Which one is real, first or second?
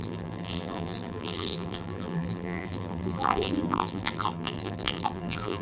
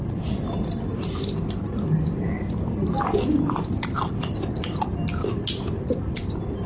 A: second